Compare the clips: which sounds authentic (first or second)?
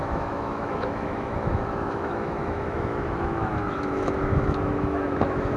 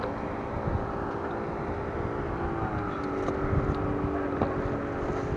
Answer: second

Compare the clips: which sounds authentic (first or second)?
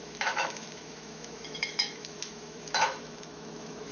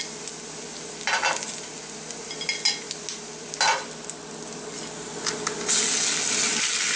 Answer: second